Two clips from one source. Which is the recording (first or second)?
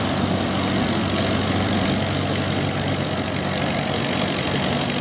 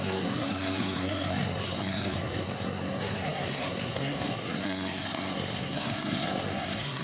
first